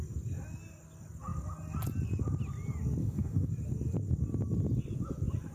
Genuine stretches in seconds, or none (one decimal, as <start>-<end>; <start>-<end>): 0.0-3.0; 3.5-5.5